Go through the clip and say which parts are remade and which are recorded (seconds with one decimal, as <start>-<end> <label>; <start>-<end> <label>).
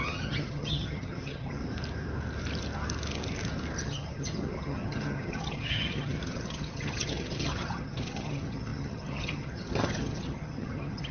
0.0-1.6 remade; 1.6-3.8 recorded; 3.8-11.1 remade